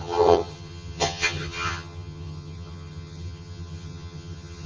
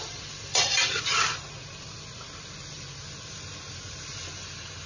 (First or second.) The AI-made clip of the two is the first